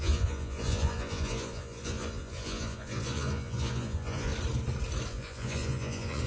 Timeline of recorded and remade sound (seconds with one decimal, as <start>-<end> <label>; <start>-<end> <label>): 0.0-4.3 remade; 4.3-5.1 recorded; 5.1-6.3 remade